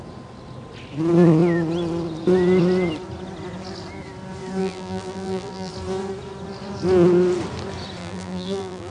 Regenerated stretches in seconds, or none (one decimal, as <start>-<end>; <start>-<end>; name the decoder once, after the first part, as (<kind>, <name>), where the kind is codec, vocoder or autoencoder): 4.6-5.7 (vocoder, BigVGAN v2); 8.0-8.9